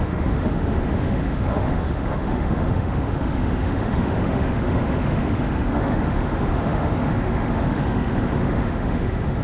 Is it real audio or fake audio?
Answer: fake